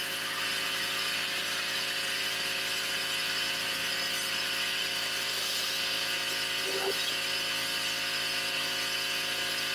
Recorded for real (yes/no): yes